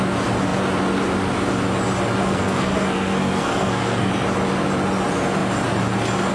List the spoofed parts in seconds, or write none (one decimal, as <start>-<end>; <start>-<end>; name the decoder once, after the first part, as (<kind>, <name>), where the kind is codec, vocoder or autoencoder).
2.2-4.1 (codec, SNAC)